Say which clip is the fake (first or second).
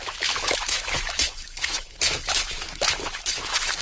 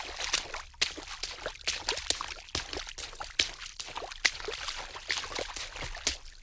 first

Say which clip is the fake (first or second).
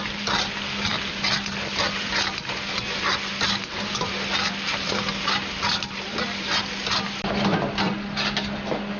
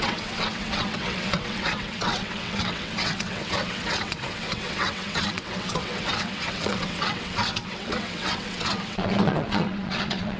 second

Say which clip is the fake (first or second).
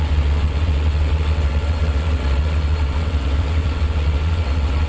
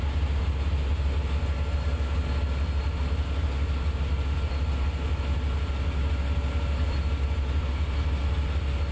first